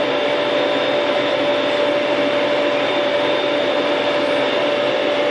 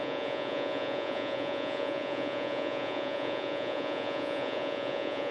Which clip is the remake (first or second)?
second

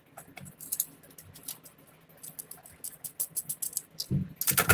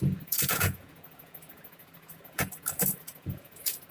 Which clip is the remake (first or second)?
second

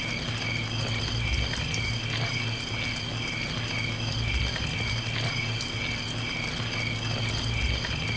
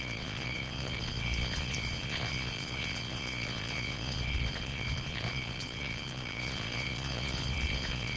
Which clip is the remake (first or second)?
second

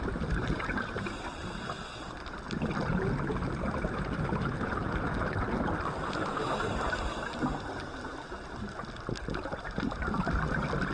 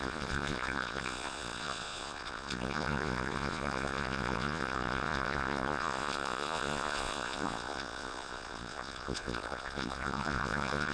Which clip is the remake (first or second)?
second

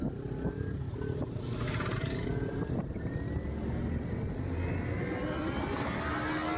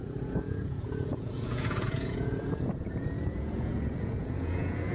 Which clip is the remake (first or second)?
second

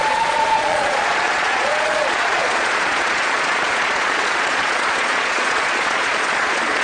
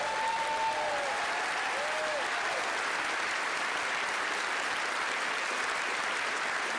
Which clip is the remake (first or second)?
first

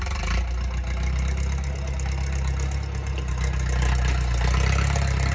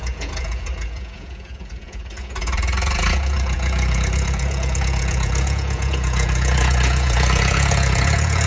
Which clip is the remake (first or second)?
second